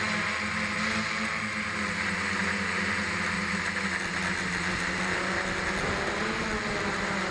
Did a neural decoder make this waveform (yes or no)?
no